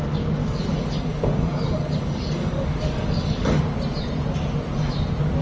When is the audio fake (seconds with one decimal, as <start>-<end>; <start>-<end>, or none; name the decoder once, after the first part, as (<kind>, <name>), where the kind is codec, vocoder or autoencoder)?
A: 0.4-3.6 (codec, DAC)

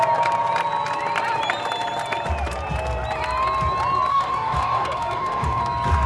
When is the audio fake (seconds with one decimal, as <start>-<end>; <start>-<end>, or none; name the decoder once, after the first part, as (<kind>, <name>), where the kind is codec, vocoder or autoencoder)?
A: 4.1-5.6 (codec, DAC)

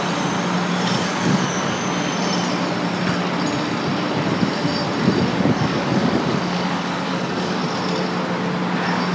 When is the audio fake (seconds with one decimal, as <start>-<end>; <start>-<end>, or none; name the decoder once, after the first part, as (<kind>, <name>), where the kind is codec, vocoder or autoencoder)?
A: 1.1-1.9 (codec, DAC); 5.3-7.6

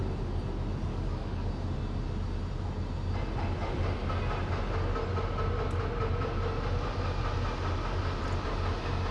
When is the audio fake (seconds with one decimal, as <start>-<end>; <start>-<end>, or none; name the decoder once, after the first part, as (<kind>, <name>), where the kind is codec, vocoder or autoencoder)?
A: 0.9-1.5 (codec, DAC)

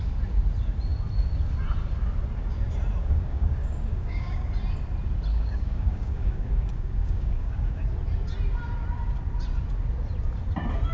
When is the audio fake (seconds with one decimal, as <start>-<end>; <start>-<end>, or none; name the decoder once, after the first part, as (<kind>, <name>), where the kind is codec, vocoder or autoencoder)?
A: 3.0-4.5 (codec, DAC); 5.3-7.8

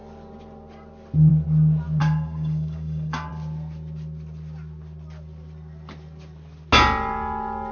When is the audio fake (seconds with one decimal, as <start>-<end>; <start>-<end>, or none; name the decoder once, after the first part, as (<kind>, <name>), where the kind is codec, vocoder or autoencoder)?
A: 2.0-3.3 (codec, DAC)

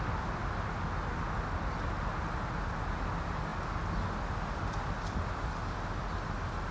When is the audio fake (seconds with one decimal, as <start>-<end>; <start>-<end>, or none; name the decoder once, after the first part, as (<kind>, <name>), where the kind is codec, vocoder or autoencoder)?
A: none